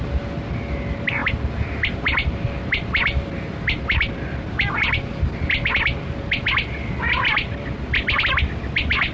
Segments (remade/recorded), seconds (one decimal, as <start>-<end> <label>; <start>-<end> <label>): 0.0-9.1 recorded